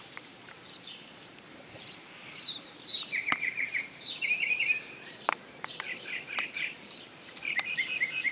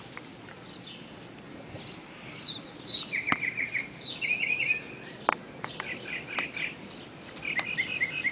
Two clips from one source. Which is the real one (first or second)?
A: second